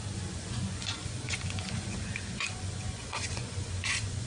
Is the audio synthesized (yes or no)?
yes